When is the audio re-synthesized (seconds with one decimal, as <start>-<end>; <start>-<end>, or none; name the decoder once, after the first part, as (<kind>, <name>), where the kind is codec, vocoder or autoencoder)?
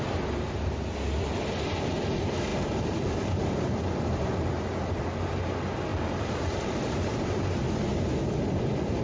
2.5-5.4 (vocoder, BigVGAN v2); 5.9-7.6